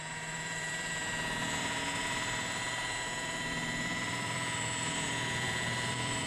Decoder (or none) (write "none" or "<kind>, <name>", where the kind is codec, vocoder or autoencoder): vocoder, BigVGAN v2